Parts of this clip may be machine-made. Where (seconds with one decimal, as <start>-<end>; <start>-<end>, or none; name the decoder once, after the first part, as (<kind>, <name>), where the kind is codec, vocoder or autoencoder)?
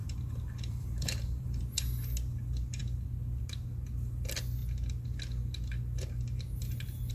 0.0-1.6 (vocoder, BigVGAN v2)